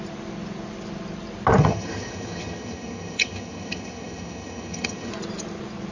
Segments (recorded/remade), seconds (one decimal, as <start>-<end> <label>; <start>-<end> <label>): 0.0-1.6 recorded; 1.6-5.1 remade; 5.1-5.9 recorded